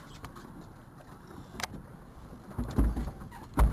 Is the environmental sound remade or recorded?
recorded